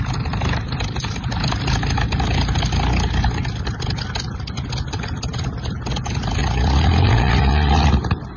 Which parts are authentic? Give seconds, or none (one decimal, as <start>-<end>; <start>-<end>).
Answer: 0.0-6.4; 7.7-8.4